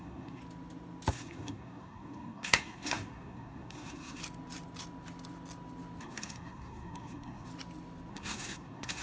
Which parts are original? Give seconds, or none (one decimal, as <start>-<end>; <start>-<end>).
0.4-1.1; 4.2-6.0; 7.5-8.1